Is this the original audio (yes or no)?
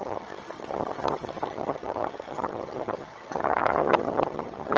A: no